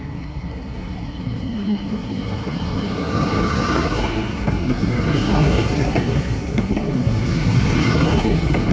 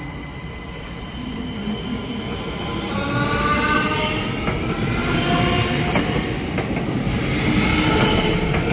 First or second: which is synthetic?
first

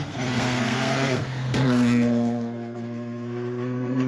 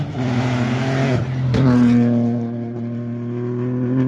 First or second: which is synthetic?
first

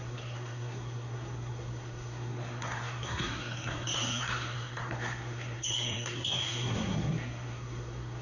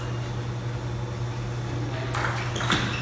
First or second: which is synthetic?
first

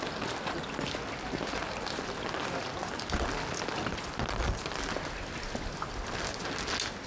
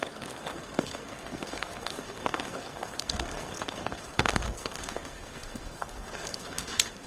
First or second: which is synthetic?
second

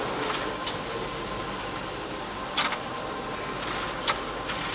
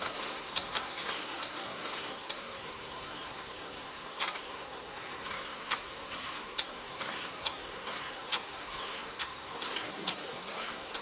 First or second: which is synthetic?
second